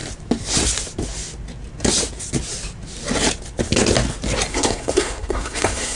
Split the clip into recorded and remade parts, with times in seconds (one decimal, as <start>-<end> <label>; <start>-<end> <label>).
0.0-4.5 recorded; 4.5-6.0 remade